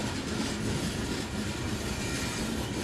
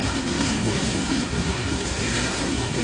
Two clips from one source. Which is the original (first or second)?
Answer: first